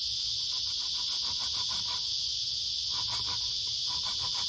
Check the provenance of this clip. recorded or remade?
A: recorded